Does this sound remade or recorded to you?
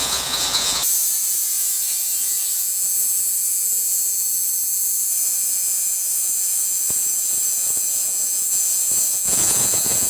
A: remade